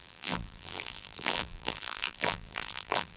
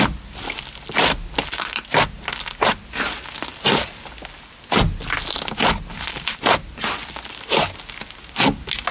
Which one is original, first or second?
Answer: second